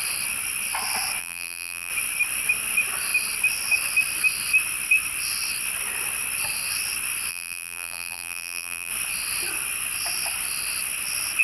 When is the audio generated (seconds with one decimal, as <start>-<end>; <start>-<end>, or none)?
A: 1.2-1.9; 7.3-8.9